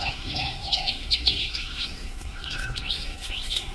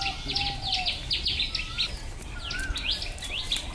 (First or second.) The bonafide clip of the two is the second